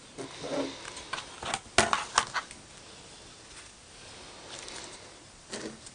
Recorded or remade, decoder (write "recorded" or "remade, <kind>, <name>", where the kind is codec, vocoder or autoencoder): recorded